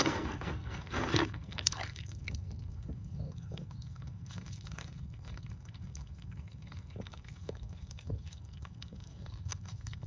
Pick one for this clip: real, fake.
fake